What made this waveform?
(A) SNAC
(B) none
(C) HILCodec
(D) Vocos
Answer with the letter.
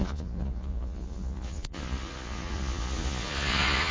D